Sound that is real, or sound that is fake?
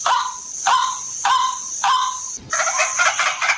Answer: real